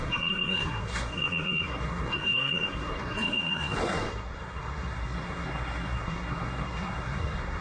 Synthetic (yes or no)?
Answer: yes